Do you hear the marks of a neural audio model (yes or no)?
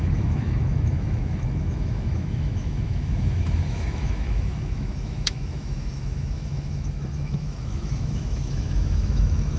yes